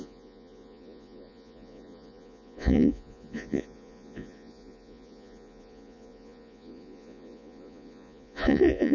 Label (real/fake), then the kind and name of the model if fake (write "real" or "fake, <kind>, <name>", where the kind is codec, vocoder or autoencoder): fake, vocoder, Vocos